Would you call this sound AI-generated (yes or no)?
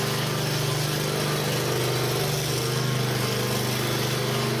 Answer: no